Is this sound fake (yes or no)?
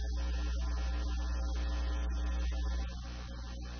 no